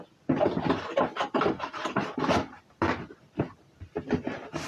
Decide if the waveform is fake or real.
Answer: real